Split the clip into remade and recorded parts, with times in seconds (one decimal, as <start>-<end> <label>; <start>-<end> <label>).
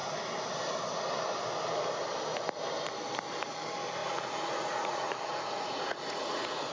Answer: 0.0-4.0 recorded; 4.0-6.7 remade